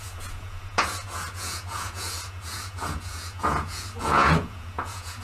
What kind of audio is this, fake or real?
fake